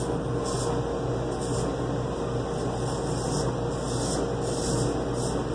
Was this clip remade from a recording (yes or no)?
no